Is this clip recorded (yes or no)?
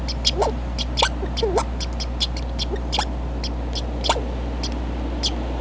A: yes